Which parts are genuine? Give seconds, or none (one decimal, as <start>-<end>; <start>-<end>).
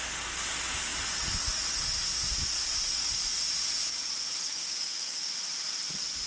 0.0-4.4; 5.3-6.3